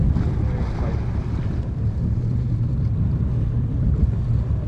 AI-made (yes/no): no